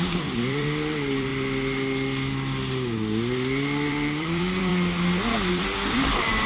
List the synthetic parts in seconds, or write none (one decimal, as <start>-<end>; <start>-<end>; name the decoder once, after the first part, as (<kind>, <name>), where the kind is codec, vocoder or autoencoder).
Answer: 0.0-1.3 (vocoder, BigVGAN v2); 3.9-4.7; 5.5-6.5